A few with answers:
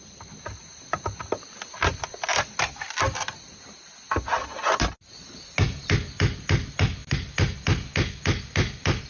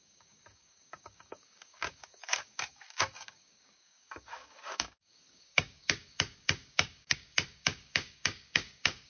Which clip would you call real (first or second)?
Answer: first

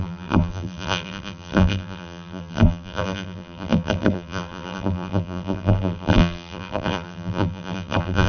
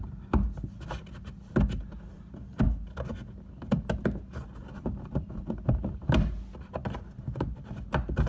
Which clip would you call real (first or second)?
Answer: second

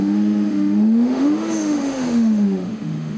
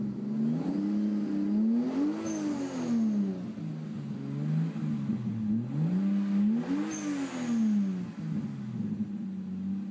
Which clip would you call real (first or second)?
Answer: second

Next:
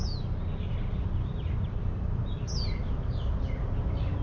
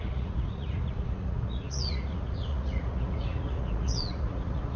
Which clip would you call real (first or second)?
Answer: first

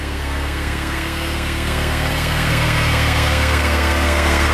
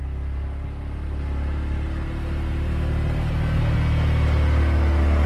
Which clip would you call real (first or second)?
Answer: second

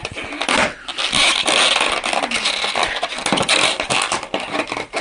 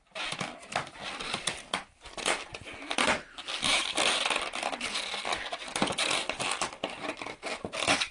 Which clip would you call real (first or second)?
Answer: first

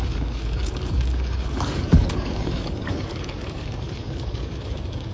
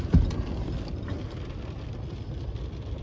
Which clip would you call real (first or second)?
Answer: second